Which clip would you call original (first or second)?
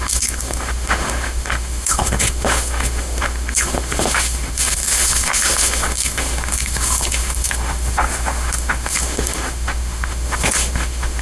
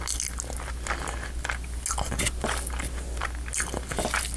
second